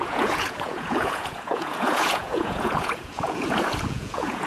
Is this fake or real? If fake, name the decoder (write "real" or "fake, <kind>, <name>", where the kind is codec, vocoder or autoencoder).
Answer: fake, vocoder, Vocos